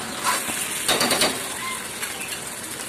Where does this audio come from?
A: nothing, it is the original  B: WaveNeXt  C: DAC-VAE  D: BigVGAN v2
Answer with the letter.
A